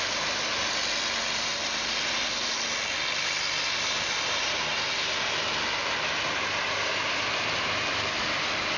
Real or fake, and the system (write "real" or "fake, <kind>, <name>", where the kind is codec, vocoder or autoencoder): real